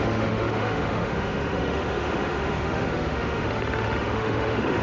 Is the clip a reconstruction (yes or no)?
yes